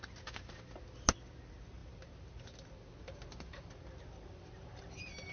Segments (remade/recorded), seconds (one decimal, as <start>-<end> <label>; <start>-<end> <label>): 0.0-5.3 recorded